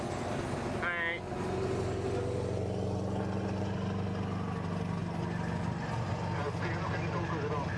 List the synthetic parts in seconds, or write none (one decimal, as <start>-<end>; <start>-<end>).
none